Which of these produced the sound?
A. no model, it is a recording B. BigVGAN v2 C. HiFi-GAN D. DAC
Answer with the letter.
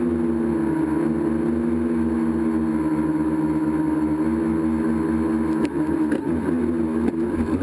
A